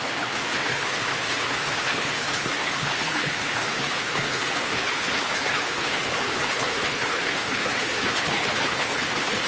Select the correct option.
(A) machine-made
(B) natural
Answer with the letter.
A